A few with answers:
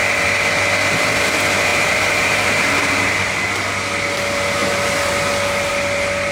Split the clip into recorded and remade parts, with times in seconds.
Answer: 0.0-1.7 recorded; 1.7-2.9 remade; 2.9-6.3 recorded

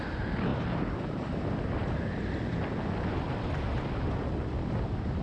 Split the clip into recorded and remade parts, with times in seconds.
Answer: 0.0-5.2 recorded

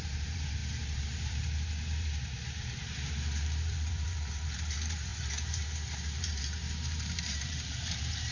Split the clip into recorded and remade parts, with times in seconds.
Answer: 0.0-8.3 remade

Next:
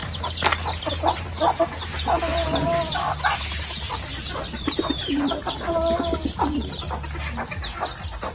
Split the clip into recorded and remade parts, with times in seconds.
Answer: 0.0-2.3 recorded; 2.3-2.9 remade; 2.9-4.1 recorded; 4.1-6.7 remade; 6.7-8.3 recorded